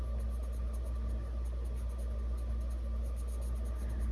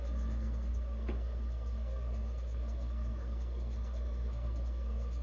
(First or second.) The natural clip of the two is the first